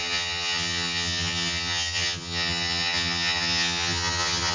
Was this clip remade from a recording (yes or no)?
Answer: yes